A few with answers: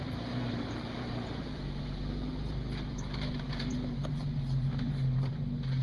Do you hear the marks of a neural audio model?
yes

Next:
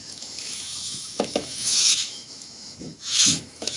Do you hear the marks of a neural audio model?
yes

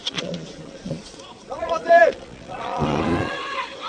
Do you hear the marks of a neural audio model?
yes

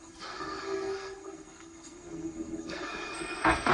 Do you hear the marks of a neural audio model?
yes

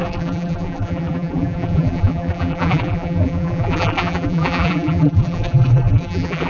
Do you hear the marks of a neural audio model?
yes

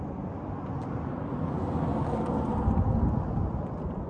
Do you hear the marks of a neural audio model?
no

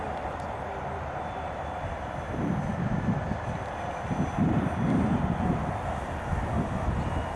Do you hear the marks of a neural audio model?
no